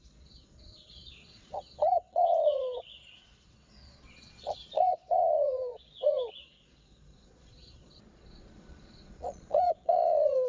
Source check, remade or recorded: remade